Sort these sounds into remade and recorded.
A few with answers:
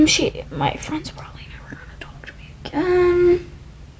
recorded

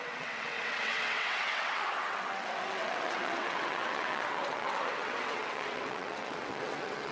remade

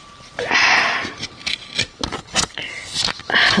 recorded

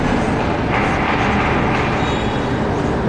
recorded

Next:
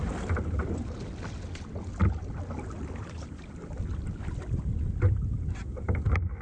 recorded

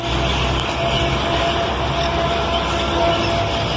recorded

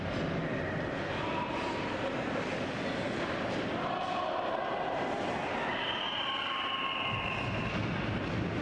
recorded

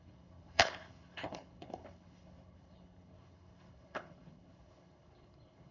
remade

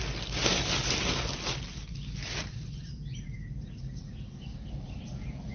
recorded